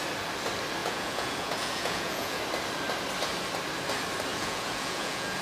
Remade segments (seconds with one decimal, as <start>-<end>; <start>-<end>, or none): 0.8-2.4; 4.3-5.4